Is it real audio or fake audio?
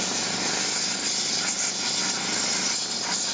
real